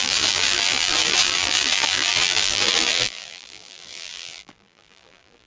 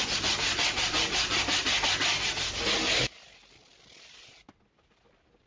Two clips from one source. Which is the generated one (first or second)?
first